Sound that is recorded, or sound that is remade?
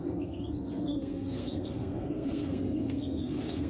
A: remade